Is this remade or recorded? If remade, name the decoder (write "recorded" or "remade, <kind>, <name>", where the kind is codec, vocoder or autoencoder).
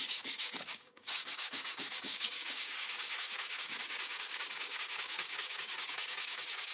remade, codec, DAC